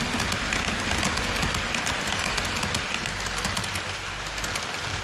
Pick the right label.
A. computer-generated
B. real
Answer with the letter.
B